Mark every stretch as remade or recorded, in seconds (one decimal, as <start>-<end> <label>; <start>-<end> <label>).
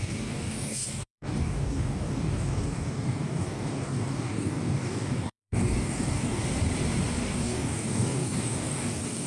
0.0-6.4 remade; 6.4-7.2 recorded; 7.2-9.3 remade